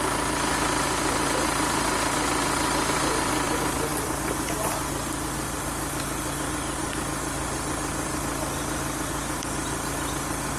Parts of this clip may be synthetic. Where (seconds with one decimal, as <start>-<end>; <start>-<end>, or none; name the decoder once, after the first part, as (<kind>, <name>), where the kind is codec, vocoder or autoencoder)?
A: 3.9-4.5 (vocoder, BigVGAN v2)